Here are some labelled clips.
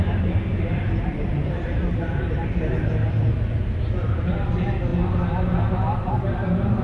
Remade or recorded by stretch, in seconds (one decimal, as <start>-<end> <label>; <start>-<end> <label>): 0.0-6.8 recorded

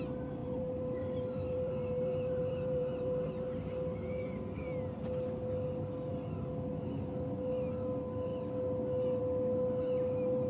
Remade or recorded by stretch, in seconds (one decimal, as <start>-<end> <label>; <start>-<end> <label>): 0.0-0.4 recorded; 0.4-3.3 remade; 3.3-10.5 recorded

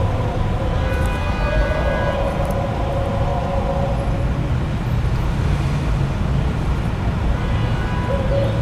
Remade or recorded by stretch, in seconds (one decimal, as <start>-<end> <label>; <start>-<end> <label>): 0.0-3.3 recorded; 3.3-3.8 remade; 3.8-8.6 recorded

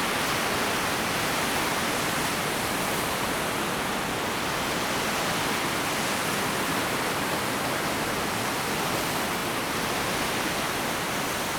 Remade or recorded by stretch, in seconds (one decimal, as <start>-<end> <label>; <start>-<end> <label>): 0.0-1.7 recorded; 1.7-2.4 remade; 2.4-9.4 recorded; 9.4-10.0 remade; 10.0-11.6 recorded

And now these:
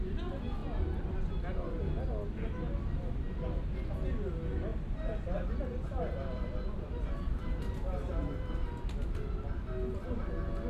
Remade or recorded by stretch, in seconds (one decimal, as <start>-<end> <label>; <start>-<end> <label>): 0.0-4.7 recorded; 4.7-8.5 remade; 8.5-10.7 recorded

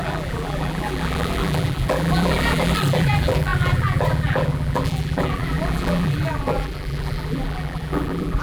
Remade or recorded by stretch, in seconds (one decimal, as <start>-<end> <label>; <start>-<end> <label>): 0.0-8.4 remade

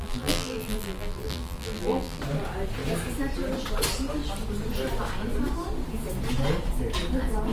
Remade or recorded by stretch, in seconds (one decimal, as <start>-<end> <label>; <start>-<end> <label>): 0.0-2.2 remade; 2.2-7.5 recorded